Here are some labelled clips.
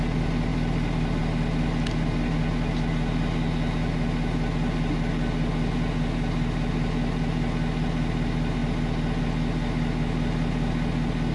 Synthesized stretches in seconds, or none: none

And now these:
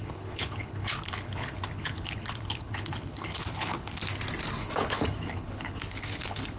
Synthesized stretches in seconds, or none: 0.0-4.1 (codec, HILCodec); 4.6-6.6

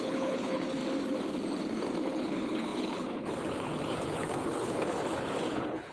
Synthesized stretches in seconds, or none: 0.0-0.8 (codec, HILCodec); 2.1-5.9

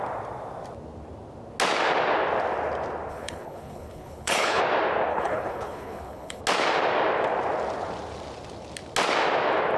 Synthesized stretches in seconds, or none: 3.1-4.6 (codec, HILCodec); 5.1-6.4

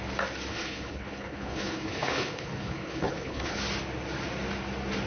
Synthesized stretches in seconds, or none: 0.5-3.6 (codec, HILCodec)

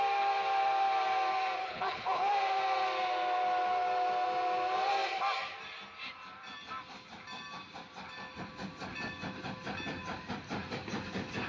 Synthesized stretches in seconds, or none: 1.6-2.3 (codec, HILCodec)

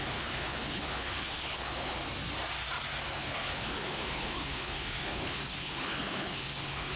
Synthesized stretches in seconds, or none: 0.0-2.0 (codec, HILCodec); 3.2-7.0

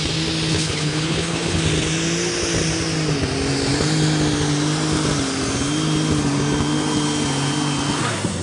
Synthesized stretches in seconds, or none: 0.5-1.6 (codec, HILCodec)